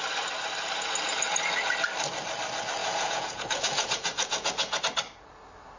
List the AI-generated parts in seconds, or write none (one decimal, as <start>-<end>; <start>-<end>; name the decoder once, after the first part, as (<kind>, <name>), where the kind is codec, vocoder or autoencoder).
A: 2.8-4.8 (vocoder, Vocos)